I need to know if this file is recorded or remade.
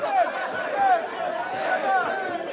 recorded